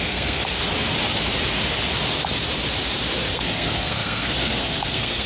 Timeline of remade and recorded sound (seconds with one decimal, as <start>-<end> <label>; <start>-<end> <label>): 0.0-0.6 remade; 0.6-3.3 recorded; 3.3-5.3 remade